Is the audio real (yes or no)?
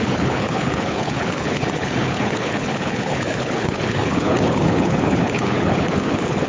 no